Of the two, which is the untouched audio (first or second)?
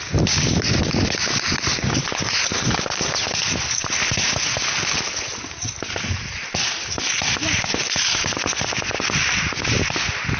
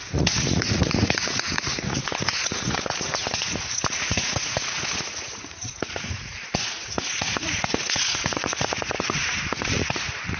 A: first